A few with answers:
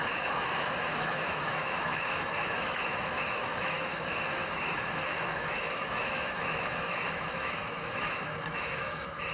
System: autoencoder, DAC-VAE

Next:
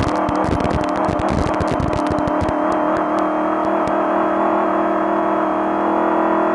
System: none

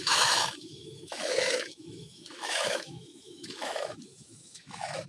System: autoencoder, DAC-VAE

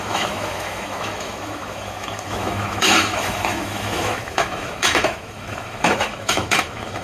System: autoencoder, DAC-VAE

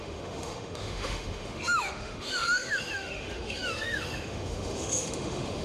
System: autoencoder, DAC-VAE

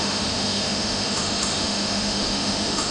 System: autoencoder, DAC-VAE